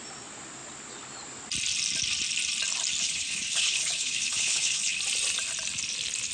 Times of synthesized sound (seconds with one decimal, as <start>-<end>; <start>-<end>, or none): 3.0-5.0